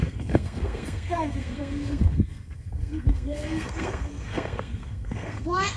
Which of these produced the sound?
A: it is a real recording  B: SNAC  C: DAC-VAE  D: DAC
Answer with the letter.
B